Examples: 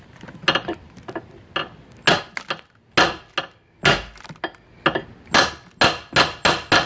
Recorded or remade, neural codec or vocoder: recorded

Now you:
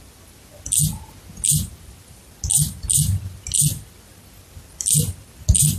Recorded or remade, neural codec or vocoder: recorded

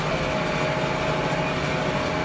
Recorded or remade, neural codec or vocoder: recorded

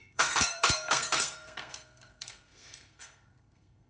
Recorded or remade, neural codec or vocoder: remade, codec, SNAC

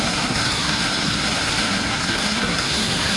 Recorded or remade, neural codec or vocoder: remade, codec, SNAC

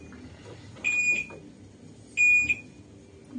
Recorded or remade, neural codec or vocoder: recorded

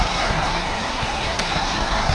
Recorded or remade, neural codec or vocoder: remade, codec, SNAC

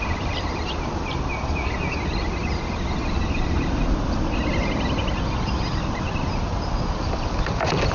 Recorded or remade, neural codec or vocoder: recorded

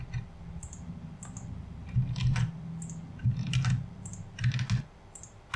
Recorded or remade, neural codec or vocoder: recorded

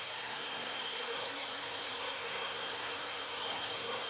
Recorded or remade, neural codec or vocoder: remade, codec, SNAC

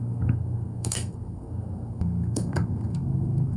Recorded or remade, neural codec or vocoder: remade, codec, SNAC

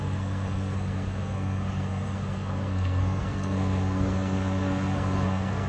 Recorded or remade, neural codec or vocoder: remade, codec, SNAC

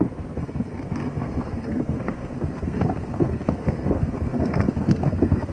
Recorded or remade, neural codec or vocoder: remade, codec, SNAC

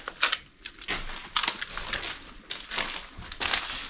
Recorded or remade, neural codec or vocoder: recorded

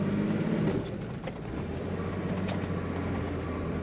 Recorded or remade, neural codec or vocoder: recorded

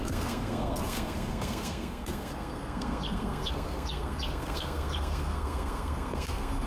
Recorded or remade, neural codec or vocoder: remade, codec, SNAC